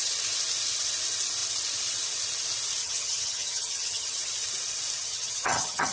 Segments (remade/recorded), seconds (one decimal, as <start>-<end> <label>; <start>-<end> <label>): 0.0-2.8 recorded; 2.8-4.2 remade; 4.2-5.0 recorded; 5.0-5.9 remade